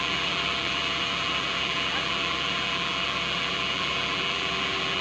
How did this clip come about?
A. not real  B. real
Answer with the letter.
A